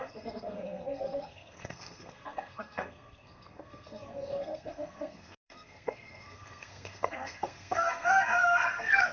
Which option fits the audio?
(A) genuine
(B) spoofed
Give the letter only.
B